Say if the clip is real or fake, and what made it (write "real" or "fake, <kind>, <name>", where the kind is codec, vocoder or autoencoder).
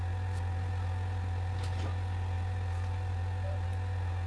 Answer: real